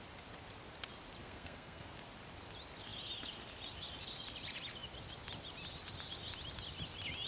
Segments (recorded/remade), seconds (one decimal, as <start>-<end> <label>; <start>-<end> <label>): 0.0-1.2 recorded; 1.2-1.9 remade; 1.9-7.3 recorded